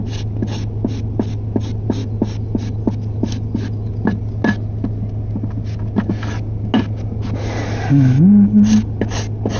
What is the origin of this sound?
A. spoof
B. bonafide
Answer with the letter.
B